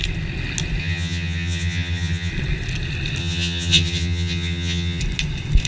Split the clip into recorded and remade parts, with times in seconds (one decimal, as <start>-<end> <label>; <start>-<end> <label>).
0.0-0.8 recorded; 0.8-2.3 remade; 2.3-3.2 recorded; 3.2-5.0 remade; 5.0-5.7 recorded